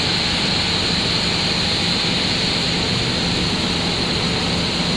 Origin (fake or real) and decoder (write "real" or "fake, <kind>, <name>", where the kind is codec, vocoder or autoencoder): real